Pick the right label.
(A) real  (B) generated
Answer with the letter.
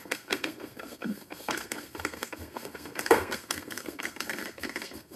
B